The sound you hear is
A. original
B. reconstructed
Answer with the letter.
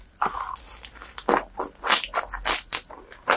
A